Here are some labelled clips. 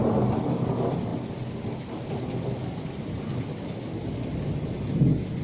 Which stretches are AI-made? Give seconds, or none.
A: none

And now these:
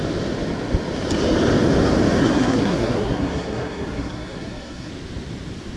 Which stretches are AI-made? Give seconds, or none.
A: 2.2-4.9 (codec, SNAC)

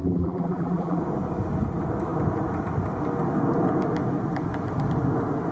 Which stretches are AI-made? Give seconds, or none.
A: 0.0-1.0 (vocoder, BigVGAN v2)